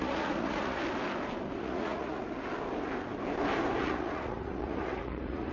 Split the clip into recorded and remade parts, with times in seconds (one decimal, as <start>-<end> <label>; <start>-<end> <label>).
0.0-0.8 remade; 0.8-1.6 recorded; 1.6-2.2 remade; 2.2-3.8 recorded; 3.8-5.5 remade